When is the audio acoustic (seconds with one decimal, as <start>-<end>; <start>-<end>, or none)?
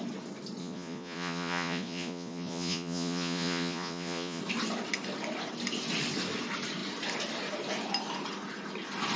0.0-0.6; 4.4-9.2